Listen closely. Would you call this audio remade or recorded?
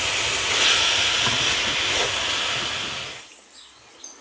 recorded